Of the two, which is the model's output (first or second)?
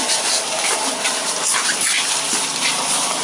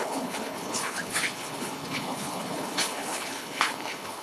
second